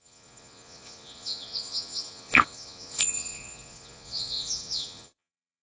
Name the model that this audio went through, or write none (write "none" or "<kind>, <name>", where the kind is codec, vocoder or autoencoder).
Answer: vocoder, Vocos